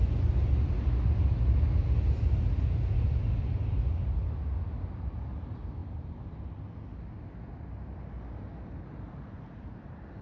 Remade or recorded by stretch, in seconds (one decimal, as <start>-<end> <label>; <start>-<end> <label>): 0.0-10.2 recorded